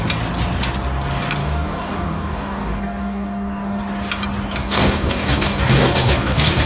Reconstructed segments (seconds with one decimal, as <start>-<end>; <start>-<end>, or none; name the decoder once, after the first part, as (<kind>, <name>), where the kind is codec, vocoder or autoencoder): 1.4-3.8 (codec, DAC); 4.6-6.7